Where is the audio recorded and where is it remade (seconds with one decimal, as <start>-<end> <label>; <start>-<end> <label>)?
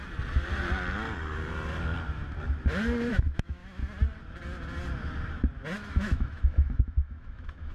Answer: 0.0-3.1 recorded; 3.1-3.8 remade; 3.8-5.9 recorded; 5.9-7.7 remade